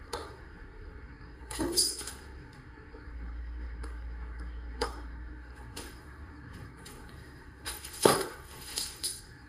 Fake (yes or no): yes